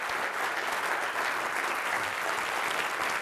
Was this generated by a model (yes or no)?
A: no